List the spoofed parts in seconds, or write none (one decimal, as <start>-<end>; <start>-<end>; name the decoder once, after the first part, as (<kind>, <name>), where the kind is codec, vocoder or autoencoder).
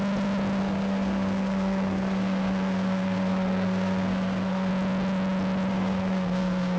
0.6-4.7 (codec, SNAC); 5.7-6.8